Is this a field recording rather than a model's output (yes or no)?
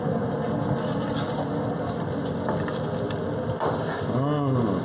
yes